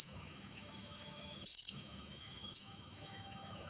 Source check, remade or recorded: remade